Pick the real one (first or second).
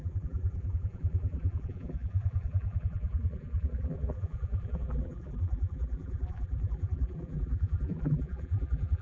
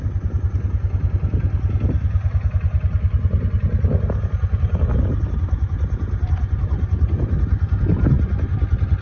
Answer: second